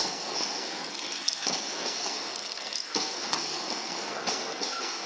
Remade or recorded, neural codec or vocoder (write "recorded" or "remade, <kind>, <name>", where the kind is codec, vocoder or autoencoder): remade, codec, SNAC